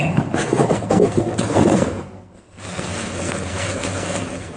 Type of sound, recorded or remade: remade